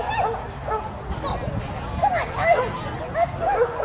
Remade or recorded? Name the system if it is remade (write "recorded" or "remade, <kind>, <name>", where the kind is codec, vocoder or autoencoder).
recorded